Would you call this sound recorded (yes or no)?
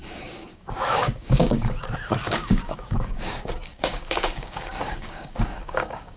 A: no